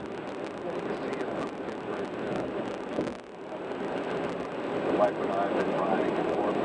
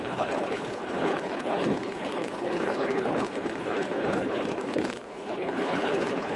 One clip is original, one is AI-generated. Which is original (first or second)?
first